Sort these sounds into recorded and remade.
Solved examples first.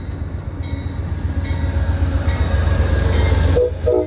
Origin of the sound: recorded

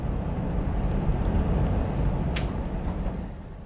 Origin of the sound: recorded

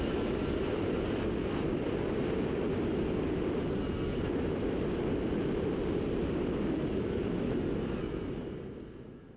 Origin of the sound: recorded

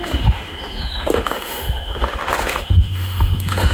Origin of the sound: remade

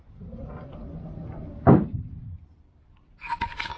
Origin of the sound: remade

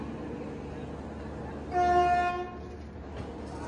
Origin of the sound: recorded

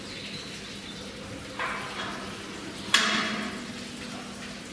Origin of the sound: recorded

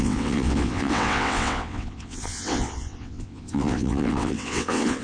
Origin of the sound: remade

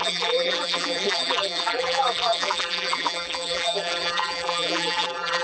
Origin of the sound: remade